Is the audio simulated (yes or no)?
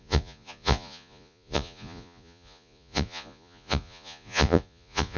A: yes